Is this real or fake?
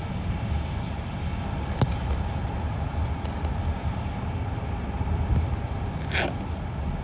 real